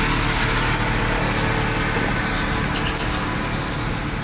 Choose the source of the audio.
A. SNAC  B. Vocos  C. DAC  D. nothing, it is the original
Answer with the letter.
D